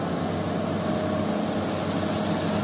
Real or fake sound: real